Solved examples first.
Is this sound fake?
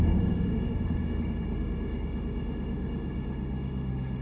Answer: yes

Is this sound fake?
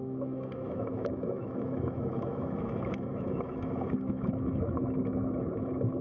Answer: yes